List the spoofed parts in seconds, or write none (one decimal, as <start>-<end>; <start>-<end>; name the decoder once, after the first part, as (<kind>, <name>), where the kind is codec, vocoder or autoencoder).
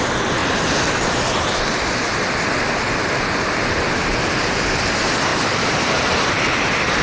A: 5.3-6.3 (vocoder, BigVGAN v2)